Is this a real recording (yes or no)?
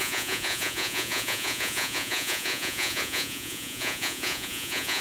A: no